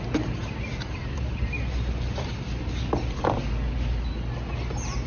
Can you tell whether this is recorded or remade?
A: recorded